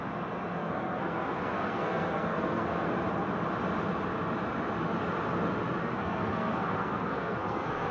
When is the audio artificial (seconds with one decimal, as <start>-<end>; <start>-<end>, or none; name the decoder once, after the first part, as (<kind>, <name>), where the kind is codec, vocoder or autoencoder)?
0.6-2.9 (codec, SNAC); 5.8-7.9